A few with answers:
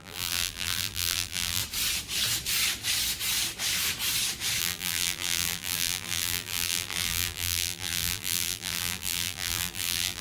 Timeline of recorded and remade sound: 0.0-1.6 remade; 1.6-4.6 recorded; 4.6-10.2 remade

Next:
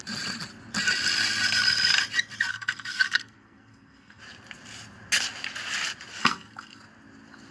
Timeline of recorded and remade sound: 0.0-2.5 recorded; 2.5-4.2 remade; 4.2-6.2 recorded; 6.2-6.8 remade; 6.8-7.5 recorded